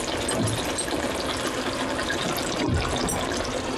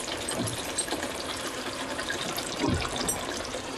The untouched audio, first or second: first